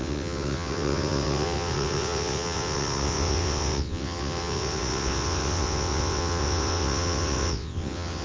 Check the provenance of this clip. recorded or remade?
remade